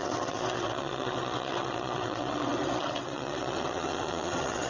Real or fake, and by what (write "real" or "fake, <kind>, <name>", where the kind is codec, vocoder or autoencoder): fake, vocoder, WaveNeXt